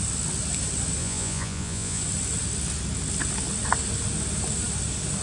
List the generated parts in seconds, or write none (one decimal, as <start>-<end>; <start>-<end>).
1.0-2.0